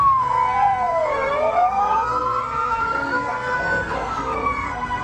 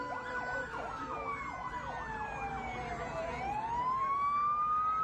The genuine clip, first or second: second